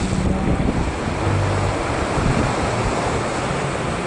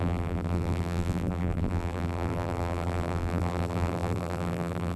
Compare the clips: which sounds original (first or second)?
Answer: first